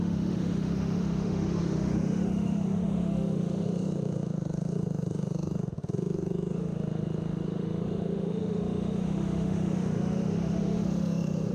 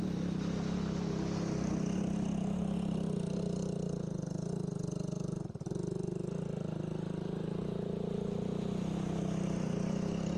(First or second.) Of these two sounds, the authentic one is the second